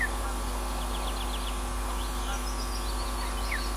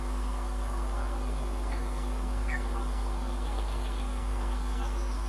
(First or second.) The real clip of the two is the first